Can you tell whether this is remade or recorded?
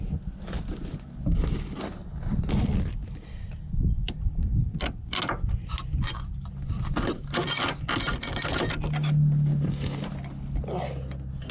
recorded